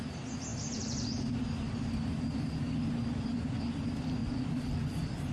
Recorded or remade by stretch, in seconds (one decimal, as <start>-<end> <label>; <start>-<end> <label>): 0.0-4.2 recorded; 4.2-5.3 remade